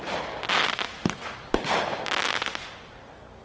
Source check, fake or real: real